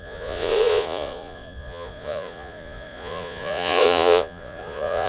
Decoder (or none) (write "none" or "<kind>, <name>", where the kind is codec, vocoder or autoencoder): vocoder, Vocos